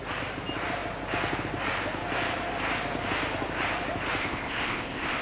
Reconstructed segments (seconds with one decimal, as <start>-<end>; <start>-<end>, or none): 4.2-5.2